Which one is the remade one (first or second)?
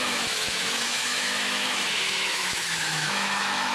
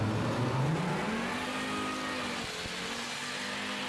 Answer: first